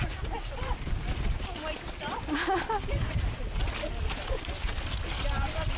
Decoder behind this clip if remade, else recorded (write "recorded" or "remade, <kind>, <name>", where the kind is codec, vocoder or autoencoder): recorded